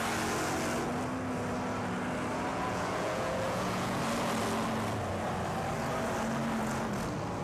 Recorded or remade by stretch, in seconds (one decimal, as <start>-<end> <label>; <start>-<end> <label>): 0.0-2.5 recorded; 2.5-4.0 remade; 4.0-7.4 recorded